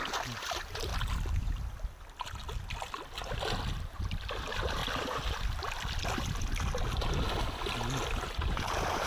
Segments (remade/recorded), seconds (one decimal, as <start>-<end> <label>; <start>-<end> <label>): 0.0-0.9 remade; 0.9-3.8 recorded; 3.8-4.8 remade; 4.8-8.2 recorded; 8.2-9.1 remade